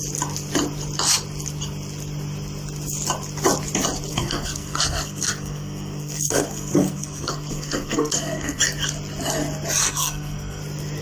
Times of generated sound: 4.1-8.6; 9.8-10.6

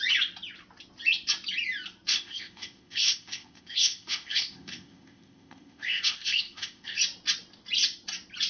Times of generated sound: 2.1-7.0